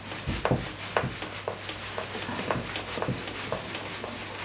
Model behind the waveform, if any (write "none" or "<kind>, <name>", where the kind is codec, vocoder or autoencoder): none